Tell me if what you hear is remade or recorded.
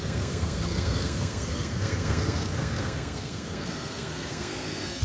remade